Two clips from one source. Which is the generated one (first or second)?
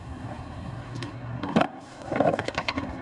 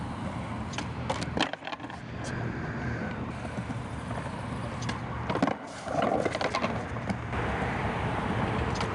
first